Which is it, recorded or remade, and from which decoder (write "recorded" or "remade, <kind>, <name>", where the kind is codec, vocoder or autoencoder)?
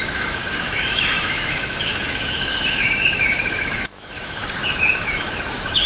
remade, autoencoder, DAC-VAE